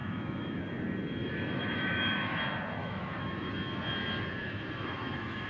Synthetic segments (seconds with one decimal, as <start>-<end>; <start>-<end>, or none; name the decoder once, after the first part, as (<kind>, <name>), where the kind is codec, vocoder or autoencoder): 0.0-0.6 (autoencoder, DAC-VAE); 1.2-2.4; 2.8-3.5; 4.4-5.5

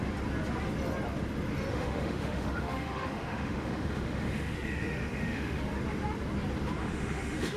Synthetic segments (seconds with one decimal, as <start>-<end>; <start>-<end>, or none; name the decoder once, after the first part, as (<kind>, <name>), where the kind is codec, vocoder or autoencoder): 1.7-5.6 (autoencoder, DAC-VAE); 6.8-7.6

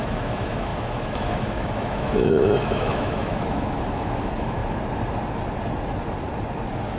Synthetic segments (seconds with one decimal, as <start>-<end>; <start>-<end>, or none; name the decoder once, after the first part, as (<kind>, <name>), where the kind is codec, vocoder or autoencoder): 0.0-4.6 (autoencoder, DAC-VAE)

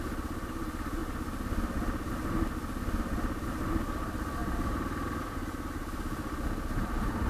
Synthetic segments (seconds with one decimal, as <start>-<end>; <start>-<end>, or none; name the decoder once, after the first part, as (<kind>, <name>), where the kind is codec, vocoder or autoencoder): none